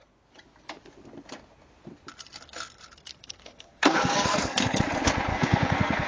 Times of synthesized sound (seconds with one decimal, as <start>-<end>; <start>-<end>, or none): 3.1-4.8; 5.3-6.1